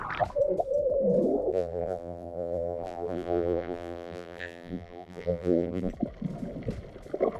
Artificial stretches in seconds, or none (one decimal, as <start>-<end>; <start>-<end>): 1.5-5.9

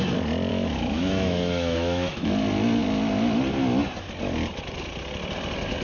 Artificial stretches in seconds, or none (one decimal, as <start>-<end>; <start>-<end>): 0.5-2.3

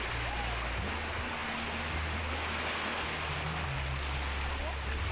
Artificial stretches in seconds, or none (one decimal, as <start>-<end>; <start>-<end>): none

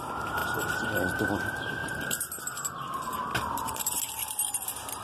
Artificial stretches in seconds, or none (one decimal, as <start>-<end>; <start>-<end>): 1.8-2.4; 3.3-4.0

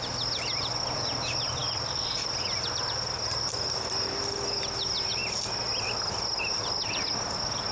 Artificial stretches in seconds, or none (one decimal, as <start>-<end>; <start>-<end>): none

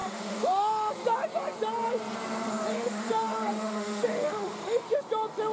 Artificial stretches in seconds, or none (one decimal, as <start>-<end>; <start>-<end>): 0.0-0.9; 2.7-5.0